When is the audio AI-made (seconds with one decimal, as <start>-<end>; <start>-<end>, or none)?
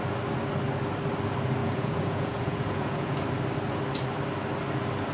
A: 1.6-3.2